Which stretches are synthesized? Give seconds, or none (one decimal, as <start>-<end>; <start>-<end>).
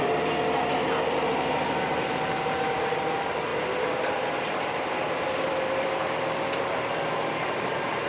0.0-8.1